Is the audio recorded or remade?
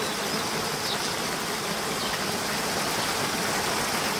recorded